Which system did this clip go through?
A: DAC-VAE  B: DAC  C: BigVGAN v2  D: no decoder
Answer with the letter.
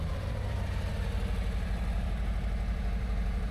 C